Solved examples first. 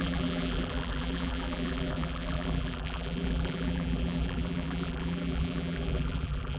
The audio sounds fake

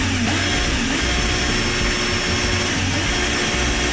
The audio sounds real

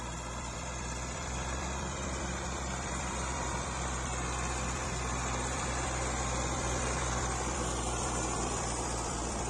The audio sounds fake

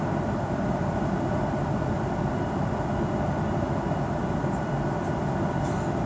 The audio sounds real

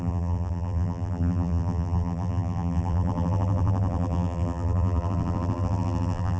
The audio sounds fake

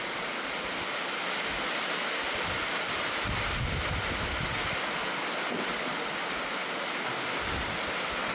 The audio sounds real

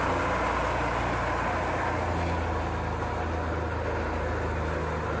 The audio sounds real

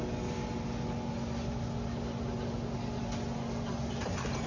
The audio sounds real